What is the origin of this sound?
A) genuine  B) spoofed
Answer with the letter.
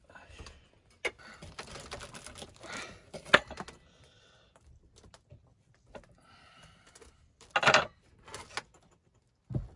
A